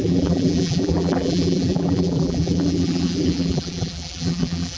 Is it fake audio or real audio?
fake